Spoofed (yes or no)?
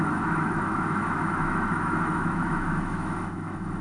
yes